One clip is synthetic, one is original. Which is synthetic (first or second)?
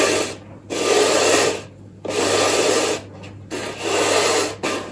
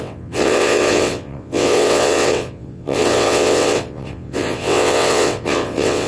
second